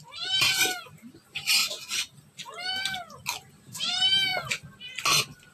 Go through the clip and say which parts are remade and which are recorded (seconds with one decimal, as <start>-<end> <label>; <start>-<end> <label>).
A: 0.0-1.6 remade; 1.6-3.5 recorded; 3.5-4.3 remade; 4.3-5.5 recorded